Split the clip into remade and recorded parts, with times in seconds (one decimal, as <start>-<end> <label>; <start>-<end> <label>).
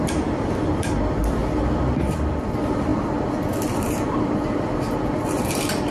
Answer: 0.0-1.4 remade; 1.4-2.0 recorded; 2.0-2.9 remade; 2.9-3.8 recorded; 3.8-5.9 remade